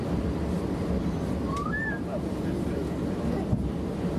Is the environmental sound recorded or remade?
recorded